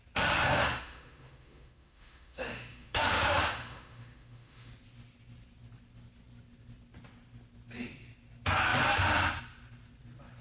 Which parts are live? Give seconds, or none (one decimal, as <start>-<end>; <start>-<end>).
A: 0.0-0.6; 4.7-10.4